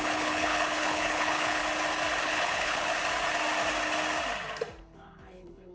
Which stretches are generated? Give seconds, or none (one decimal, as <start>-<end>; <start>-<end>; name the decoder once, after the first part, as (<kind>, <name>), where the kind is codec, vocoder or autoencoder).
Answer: 0.0-1.6 (codec, HILCodec); 2.2-2.9; 4.8-5.7